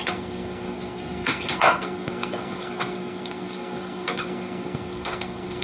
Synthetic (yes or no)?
yes